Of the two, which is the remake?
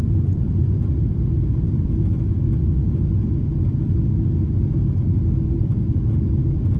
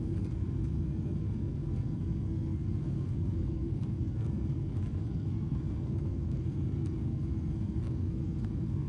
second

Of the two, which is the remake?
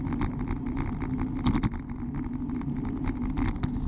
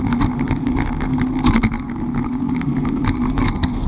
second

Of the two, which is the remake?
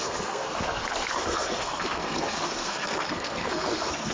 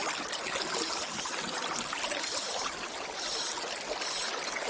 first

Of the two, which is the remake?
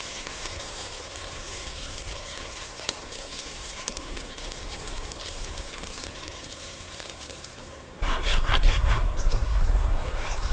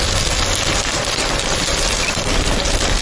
first